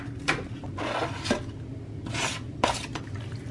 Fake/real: real